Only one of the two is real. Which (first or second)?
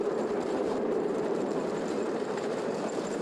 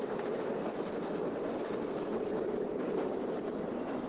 second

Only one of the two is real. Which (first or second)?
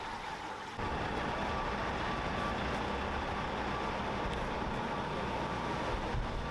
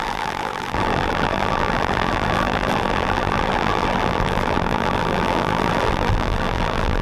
first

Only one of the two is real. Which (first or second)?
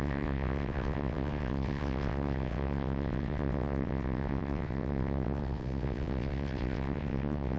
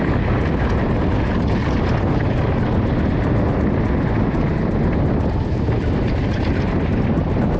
second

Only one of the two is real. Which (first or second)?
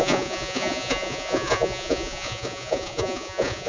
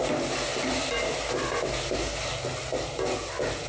second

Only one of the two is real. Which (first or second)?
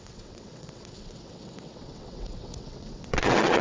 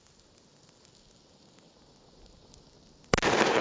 second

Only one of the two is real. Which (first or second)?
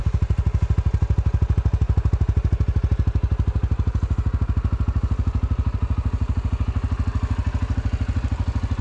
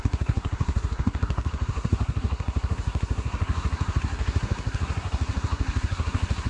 first